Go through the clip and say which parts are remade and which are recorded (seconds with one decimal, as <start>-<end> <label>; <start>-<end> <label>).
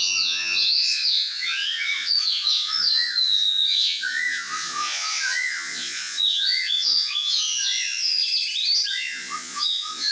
0.0-8.2 remade; 8.2-8.9 recorded; 8.9-10.1 remade